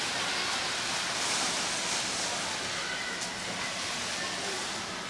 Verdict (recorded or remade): recorded